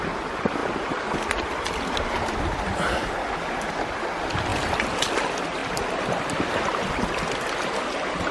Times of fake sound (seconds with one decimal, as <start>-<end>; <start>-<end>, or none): 5.6-6.9